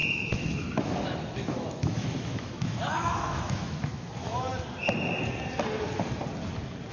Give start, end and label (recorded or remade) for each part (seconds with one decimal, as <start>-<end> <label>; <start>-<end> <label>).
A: 0.0-4.5 remade; 4.5-6.9 recorded